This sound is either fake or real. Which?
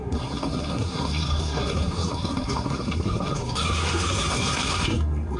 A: fake